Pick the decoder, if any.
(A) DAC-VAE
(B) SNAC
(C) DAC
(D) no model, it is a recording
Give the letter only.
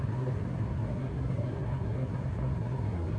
B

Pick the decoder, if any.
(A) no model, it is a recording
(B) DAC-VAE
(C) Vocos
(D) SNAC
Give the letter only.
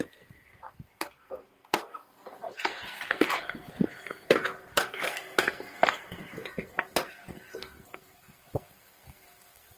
D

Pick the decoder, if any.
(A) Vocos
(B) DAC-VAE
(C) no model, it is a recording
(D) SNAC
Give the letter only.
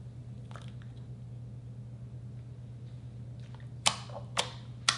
C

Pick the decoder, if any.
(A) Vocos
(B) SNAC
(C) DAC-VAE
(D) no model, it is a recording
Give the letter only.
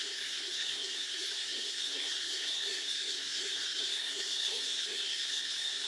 B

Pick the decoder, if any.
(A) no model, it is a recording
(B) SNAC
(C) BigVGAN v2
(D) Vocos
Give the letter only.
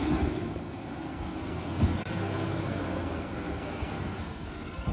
B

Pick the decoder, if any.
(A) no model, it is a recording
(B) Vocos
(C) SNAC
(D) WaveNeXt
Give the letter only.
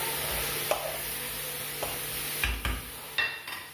A